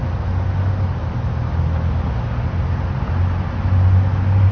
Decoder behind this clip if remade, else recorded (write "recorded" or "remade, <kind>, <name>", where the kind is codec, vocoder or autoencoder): recorded